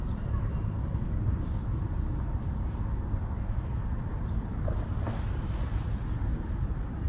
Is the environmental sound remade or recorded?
recorded